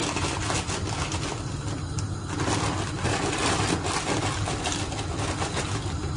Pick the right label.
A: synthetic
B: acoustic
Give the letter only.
B